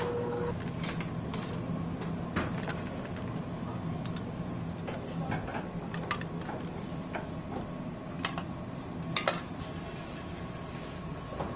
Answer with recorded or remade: recorded